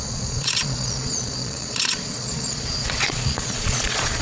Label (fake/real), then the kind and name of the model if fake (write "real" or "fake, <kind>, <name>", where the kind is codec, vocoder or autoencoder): fake, vocoder, Vocos